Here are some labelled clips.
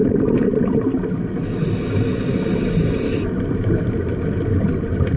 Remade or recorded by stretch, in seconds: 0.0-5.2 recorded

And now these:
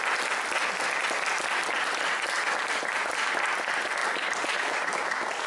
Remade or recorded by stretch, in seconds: 0.0-4.0 recorded; 4.0-4.9 remade; 4.9-5.5 recorded

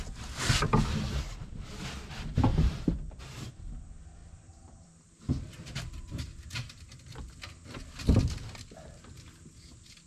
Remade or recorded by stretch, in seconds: 0.0-2.5 recorded; 2.5-3.2 remade; 3.2-4.2 recorded; 4.2-6.5 remade; 6.5-10.1 recorded

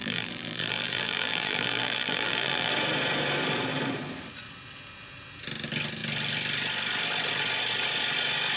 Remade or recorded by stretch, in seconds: 0.0-2.7 remade; 2.7-8.6 recorded

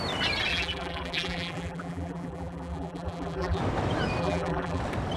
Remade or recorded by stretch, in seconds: 0.0-0.5 recorded; 0.5-3.6 remade; 3.6-4.2 recorded; 4.2-4.8 remade; 4.8-5.2 recorded

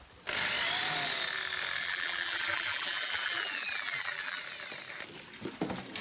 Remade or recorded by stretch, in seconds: 0.0-1.8 recorded; 1.8-4.4 remade; 4.4-6.0 recorded

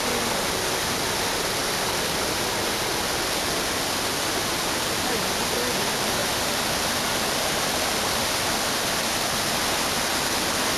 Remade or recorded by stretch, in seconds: 0.0-10.8 recorded

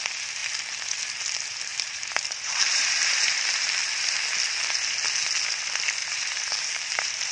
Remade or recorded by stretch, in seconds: 0.0-1.7 recorded; 1.7-3.8 remade; 3.8-6.0 recorded; 6.0-7.3 remade